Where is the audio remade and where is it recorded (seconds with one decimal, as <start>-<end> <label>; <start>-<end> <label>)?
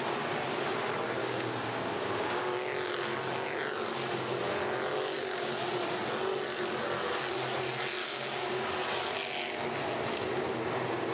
0.0-1.2 recorded; 1.2-2.9 remade; 2.9-4.9 recorded; 4.9-5.5 remade; 5.5-8.0 recorded; 8.0-8.7 remade; 8.7-11.1 recorded